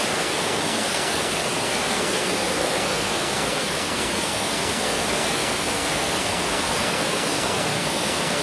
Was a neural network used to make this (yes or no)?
yes